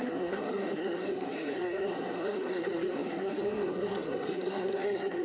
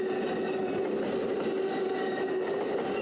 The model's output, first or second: first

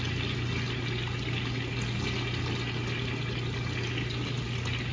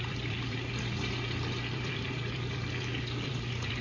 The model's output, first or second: second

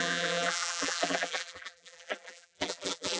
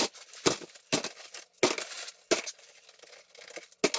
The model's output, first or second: first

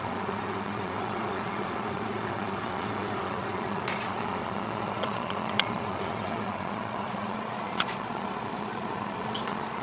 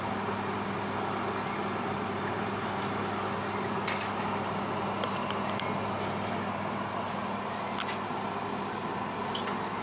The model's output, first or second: first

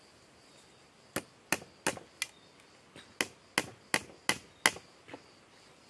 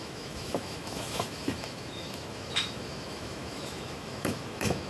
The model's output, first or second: second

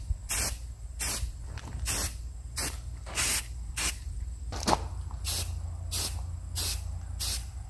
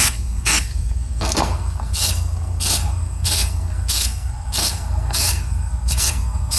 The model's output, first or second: second